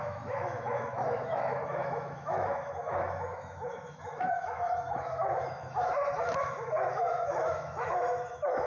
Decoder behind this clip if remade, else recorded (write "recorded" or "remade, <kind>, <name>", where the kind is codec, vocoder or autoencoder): remade, autoencoder, DAC-VAE